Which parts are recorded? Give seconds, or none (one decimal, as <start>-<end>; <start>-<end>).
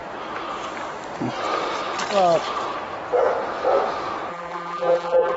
0.0-4.3